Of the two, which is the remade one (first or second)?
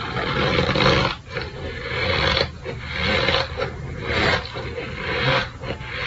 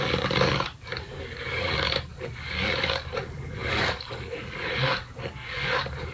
second